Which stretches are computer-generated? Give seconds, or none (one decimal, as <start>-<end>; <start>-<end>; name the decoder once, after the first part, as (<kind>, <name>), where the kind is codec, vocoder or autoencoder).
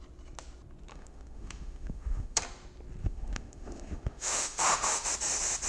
0.9-2.4 (autoencoder, DAC-VAE); 3.0-5.1